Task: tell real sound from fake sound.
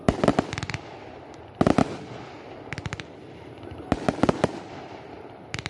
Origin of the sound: real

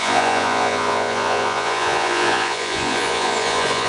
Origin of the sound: fake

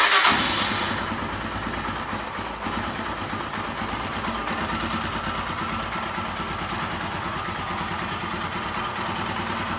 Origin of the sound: real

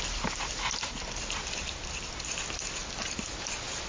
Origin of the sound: real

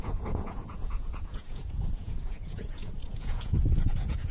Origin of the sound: fake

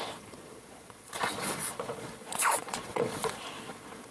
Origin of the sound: fake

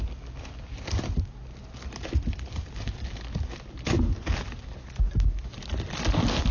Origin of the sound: real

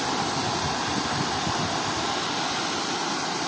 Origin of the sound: real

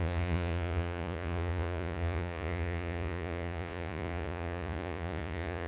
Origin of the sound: fake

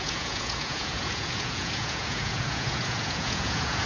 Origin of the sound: fake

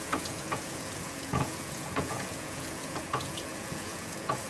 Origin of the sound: fake